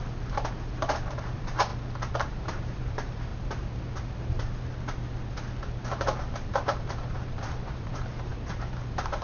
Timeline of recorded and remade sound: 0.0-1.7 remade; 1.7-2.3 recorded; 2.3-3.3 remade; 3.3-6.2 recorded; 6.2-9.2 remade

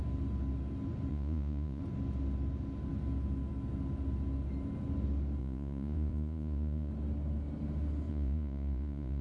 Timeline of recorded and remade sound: 0.0-1.1 recorded; 1.1-1.8 remade; 1.8-5.4 recorded; 5.4-6.9 remade; 6.9-8.1 recorded; 8.1-9.2 remade

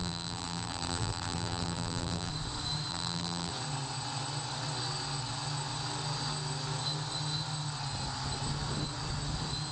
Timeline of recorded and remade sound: 0.0-2.3 remade; 2.3-2.9 recorded; 2.9-3.5 remade; 3.5-9.7 recorded

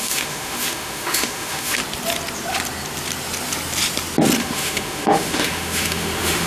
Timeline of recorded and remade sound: 0.0-1.8 remade; 1.8-4.4 recorded; 4.4-6.5 remade

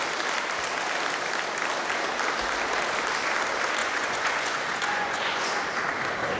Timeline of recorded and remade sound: 0.0-3.8 recorded; 3.8-5.5 remade; 5.5-6.4 recorded